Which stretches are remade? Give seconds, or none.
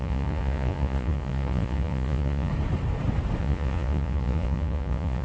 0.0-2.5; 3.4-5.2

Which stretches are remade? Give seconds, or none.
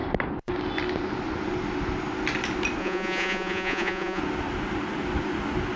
2.8-4.2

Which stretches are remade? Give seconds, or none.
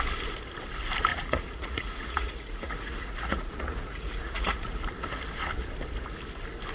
1.1-4.8